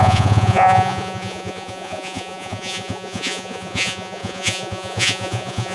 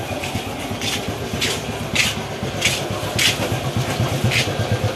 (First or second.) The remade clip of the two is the first